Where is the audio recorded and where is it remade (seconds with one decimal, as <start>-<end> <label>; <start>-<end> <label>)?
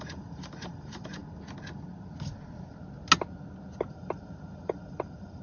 0.0-1.2 remade; 1.2-3.9 recorded; 3.9-5.4 remade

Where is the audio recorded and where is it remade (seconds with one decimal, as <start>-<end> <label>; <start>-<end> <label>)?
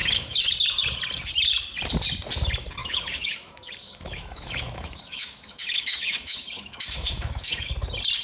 0.0-0.5 remade; 0.5-2.8 recorded; 2.8-7.7 remade; 7.7-8.2 recorded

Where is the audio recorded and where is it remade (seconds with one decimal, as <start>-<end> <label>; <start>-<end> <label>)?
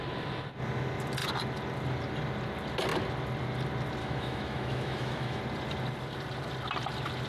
0.0-4.0 recorded; 4.0-5.4 remade; 5.4-7.3 recorded